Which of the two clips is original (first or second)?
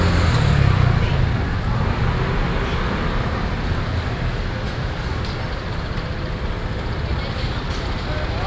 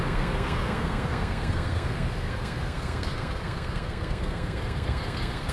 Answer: first